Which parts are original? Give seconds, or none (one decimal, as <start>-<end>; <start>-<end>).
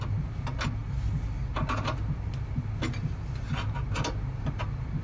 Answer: 0.0-5.0